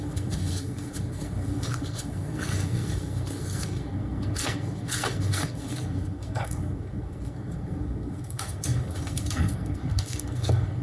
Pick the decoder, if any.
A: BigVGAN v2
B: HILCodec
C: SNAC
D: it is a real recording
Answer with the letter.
C